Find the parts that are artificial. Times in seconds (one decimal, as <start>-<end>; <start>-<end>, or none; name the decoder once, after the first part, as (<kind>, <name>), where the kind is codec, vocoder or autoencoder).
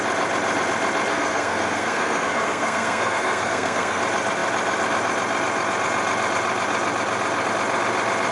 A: 1.1-4.0 (codec, SNAC)